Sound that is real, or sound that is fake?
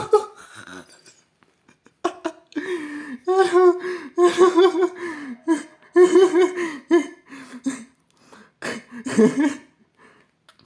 real